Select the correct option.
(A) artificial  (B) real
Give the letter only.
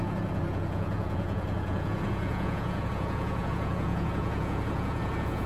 A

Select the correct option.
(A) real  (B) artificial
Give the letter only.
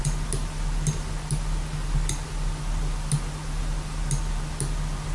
A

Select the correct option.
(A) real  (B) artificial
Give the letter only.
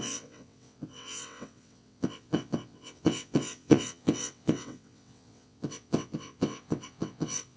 B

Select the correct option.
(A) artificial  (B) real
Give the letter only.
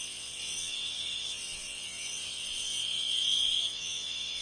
A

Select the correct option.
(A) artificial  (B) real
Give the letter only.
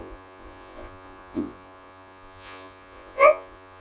A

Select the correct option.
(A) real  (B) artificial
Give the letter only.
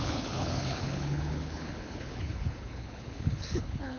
B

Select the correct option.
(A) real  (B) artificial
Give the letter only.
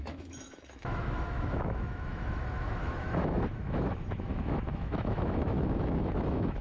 B